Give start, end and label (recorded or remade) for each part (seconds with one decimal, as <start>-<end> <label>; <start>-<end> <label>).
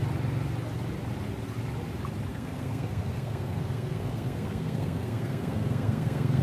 0.0-2.3 recorded; 2.3-6.4 remade